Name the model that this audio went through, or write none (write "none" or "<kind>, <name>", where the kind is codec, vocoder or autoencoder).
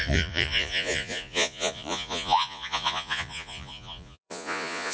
vocoder, Vocos